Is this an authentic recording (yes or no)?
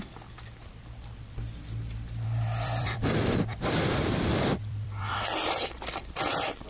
no